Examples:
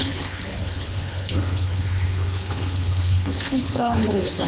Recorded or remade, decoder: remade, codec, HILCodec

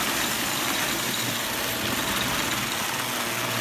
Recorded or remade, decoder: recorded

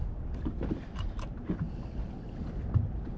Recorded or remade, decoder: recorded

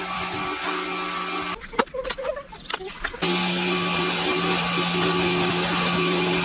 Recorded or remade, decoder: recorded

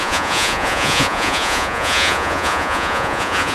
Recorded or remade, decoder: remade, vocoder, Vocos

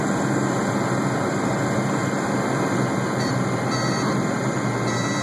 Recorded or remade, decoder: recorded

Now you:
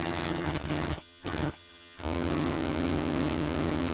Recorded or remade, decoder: remade, vocoder, HiFi-GAN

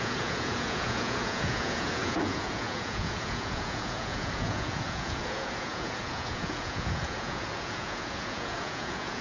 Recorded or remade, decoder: remade, vocoder, Vocos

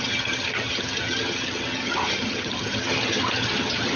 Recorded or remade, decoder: remade, vocoder, HiFi-GAN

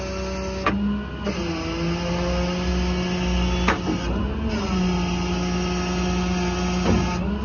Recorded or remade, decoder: recorded